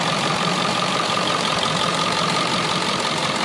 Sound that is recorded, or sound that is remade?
remade